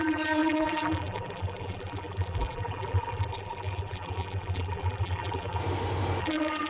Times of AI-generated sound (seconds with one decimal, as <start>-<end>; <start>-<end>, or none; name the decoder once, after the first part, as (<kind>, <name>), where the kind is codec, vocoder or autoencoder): 0.0-5.6 (vocoder, BigVGAN v2); 6.2-6.7